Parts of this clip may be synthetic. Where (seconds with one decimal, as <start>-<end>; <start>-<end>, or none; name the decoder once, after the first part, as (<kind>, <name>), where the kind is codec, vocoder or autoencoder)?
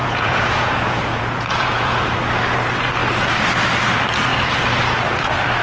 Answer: 0.0-2.0 (vocoder, Vocos)